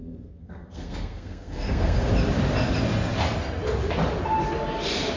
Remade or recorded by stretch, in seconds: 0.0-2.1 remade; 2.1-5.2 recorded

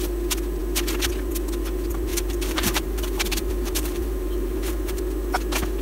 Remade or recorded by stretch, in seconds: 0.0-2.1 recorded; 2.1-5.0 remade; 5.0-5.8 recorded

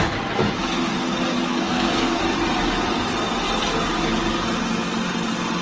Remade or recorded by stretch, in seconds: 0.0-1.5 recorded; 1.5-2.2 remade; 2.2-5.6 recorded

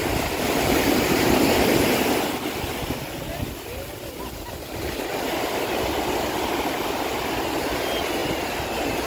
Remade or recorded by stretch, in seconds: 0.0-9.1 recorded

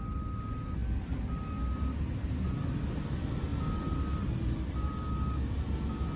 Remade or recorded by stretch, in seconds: 0.0-6.2 recorded

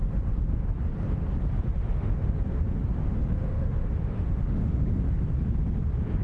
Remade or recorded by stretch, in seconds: 0.0-1.8 recorded; 1.8-2.3 remade; 2.3-3.0 recorded; 3.0-5.0 remade; 5.0-6.2 recorded